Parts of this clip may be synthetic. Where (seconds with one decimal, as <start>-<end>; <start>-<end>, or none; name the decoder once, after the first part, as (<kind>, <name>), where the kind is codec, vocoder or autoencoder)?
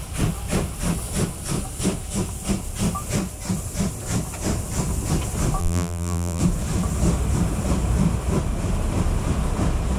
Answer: 5.6-6.4 (vocoder, BigVGAN v2)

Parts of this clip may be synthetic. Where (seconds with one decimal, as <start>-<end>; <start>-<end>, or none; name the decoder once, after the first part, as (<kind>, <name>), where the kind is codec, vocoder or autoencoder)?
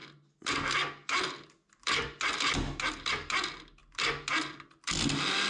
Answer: none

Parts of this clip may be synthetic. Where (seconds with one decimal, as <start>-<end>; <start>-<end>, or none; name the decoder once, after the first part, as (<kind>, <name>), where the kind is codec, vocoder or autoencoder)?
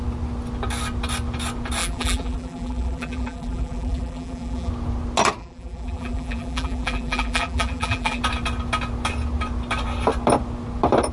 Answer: 1.8-4.7 (vocoder, BigVGAN v2); 5.4-8.2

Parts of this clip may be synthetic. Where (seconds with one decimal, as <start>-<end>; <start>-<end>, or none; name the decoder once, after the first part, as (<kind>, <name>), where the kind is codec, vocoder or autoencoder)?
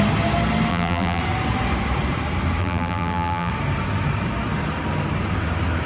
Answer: 0.7-1.2 (vocoder, BigVGAN v2); 2.6-3.5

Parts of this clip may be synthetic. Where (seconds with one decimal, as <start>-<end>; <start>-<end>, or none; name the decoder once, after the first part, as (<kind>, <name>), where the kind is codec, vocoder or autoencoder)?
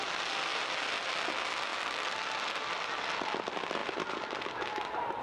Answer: none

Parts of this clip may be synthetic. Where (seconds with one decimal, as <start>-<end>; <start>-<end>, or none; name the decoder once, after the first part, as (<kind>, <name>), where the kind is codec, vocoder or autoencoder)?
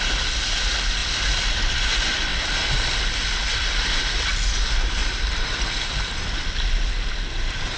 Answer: 1.0-1.8 (vocoder, BigVGAN v2)